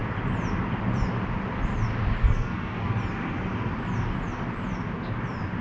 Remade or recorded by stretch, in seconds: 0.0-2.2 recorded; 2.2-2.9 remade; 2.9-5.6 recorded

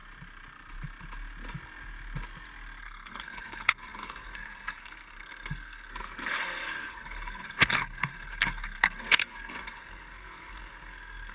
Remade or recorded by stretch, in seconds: 0.0-2.8 recorded; 2.8-11.3 remade

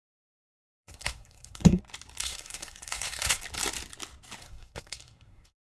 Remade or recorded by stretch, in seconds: 0.0-1.8 remade; 1.8-2.2 recorded; 2.2-3.4 remade; 3.4-4.4 recorded; 4.4-5.6 remade

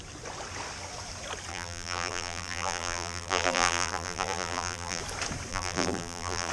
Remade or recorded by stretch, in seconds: 0.0-1.5 recorded; 1.5-5.0 remade; 5.0-5.5 recorded; 5.5-6.5 remade

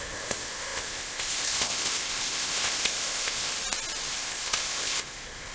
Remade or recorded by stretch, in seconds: 0.0-3.5 remade; 3.5-4.1 recorded; 4.1-5.5 remade

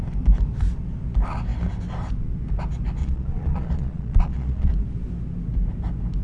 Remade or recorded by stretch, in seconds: 0.0-3.0 recorded; 3.0-4.7 remade; 4.7-6.2 recorded